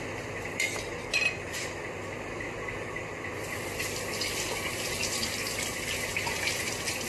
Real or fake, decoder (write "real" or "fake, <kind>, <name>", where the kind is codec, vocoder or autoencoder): real